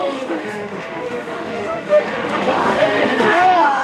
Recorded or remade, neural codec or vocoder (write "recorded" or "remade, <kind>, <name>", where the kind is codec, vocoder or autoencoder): remade, autoencoder, DAC-VAE